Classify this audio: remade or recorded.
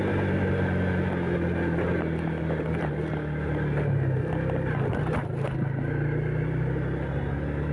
recorded